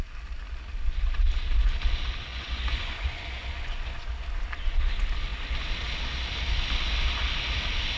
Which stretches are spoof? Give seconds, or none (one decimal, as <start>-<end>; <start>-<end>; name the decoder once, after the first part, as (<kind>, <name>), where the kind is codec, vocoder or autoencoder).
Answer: 2.3-4.1 (vocoder, Vocos)